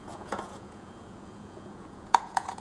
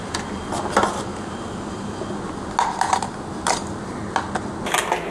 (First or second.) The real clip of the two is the second